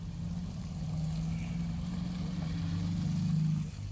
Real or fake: real